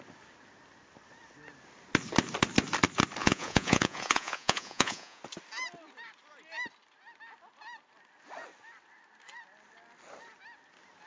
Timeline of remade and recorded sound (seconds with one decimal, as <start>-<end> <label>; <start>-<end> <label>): 0.0-3.2 recorded; 3.2-5.2 remade; 5.2-11.1 recorded